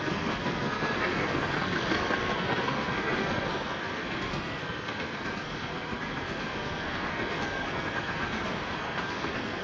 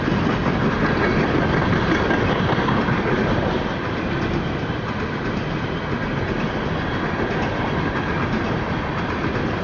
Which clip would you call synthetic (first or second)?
first